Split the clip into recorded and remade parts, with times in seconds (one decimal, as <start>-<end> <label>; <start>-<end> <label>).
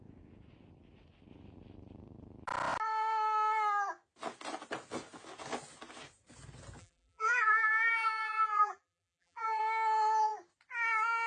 0.0-6.8 recorded; 6.8-9.6 remade; 9.6-11.3 recorded